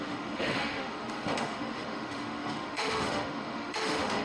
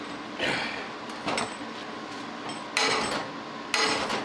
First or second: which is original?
second